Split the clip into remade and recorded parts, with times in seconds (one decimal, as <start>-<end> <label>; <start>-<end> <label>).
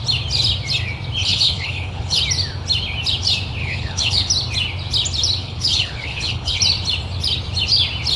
0.0-1.2 recorded; 1.2-2.2 remade; 2.2-3.6 recorded; 3.6-4.3 remade; 4.3-5.4 recorded; 5.4-6.6 remade; 6.6-8.2 recorded